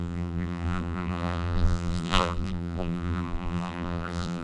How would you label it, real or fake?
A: fake